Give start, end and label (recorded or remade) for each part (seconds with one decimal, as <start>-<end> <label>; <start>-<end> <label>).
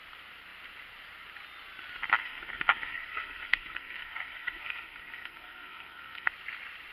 0.0-2.2 recorded; 2.2-6.3 remade; 6.3-6.9 recorded